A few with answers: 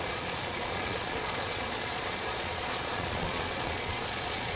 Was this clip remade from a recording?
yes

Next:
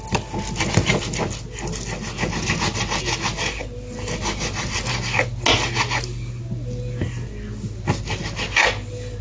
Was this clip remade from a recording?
no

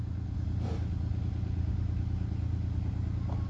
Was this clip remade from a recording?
no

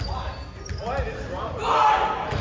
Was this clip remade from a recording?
no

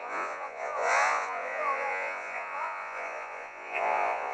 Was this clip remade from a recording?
yes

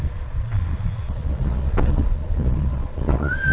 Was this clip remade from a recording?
yes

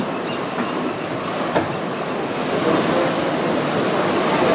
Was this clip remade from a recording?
no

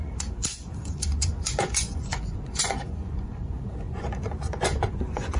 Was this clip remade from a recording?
yes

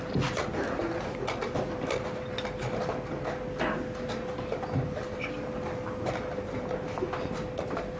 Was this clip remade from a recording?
no